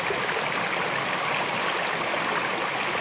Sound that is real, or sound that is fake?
real